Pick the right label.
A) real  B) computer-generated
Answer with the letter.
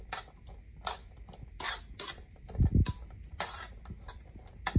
A